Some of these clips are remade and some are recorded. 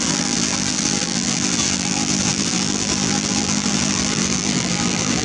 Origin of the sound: remade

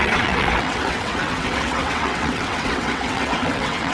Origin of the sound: remade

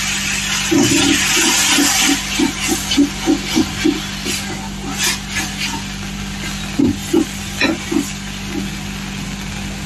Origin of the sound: recorded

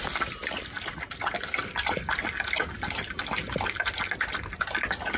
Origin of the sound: recorded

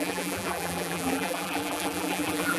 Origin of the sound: remade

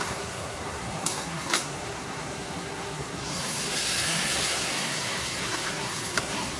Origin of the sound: remade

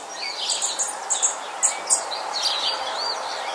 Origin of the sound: recorded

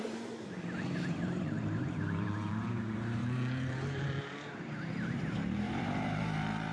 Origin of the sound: remade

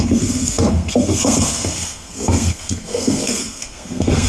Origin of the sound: remade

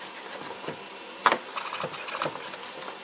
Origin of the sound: recorded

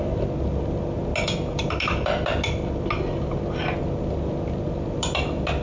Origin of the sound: recorded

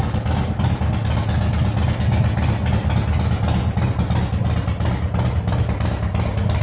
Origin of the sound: recorded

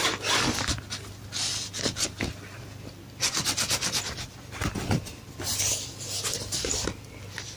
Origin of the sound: recorded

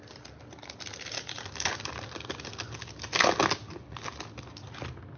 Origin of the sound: recorded